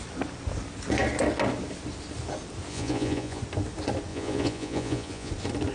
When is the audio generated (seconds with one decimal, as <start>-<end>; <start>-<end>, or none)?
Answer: 2.7-3.4; 4.1-5.3

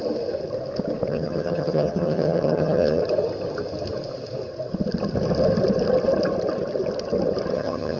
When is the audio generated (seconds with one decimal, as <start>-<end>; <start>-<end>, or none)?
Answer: 1.1-3.0; 7.5-8.0

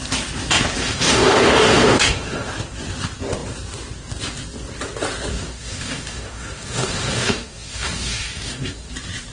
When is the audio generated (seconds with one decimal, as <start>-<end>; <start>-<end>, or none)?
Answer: 0.8-2.5; 5.3-8.9

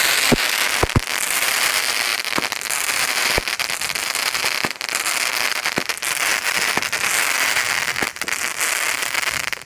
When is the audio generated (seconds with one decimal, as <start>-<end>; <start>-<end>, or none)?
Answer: 0.0-9.6

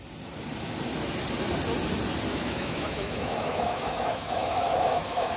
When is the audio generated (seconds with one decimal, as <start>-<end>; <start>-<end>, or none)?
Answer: 2.3-5.4

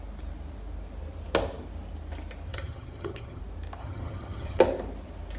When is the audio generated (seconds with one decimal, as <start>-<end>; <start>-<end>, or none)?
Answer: 2.5-3.4; 3.8-4.6

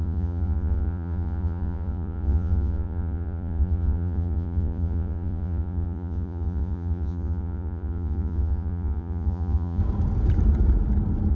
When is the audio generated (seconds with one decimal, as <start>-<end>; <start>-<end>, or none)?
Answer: 0.0-9.8

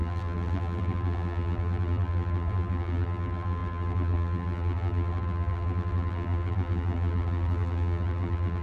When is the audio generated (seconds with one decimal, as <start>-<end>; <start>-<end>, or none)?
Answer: 0.0-8.6